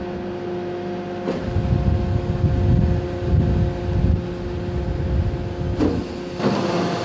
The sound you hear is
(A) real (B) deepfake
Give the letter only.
A